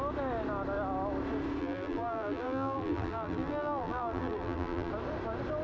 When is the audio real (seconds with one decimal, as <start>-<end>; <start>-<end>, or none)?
0.0-1.6; 4.9-5.6